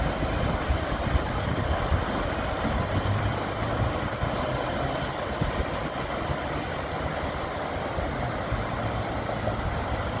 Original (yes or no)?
yes